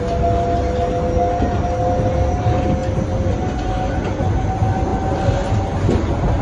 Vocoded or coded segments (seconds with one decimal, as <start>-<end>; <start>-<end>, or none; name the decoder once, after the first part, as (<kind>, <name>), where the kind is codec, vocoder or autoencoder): none